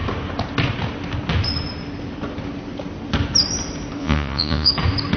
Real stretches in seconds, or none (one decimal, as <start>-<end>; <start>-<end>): 0.0-4.0; 4.7-5.2